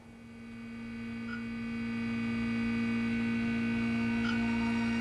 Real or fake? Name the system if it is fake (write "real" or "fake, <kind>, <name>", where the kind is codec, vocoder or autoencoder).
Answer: real